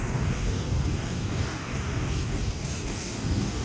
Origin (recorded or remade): remade